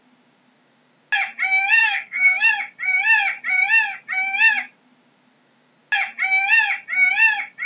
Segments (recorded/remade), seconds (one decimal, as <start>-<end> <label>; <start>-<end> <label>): 0.0-1.8 recorded; 1.8-2.5 remade; 2.5-7.7 recorded